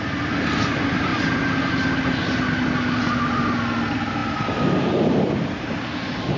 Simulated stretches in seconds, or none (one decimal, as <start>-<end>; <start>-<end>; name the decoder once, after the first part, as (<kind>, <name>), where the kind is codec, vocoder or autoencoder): none